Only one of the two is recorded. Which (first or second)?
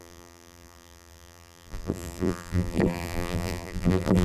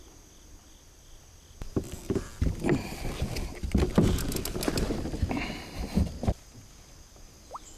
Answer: second